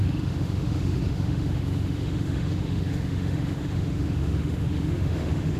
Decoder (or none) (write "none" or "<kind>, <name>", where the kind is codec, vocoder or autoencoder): autoencoder, DAC-VAE